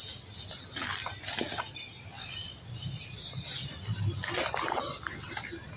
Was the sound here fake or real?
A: fake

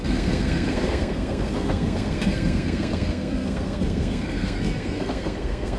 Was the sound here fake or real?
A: fake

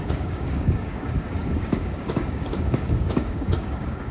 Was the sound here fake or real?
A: fake